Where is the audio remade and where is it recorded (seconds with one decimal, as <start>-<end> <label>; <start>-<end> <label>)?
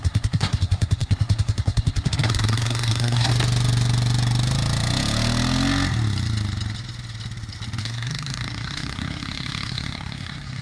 0.0-3.3 remade; 3.3-7.8 recorded; 7.8-10.6 remade